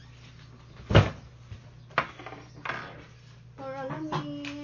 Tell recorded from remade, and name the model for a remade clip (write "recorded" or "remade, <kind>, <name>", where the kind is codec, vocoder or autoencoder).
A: recorded